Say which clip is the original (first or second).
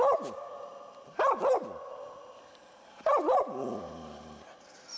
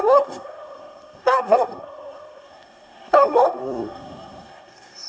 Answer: first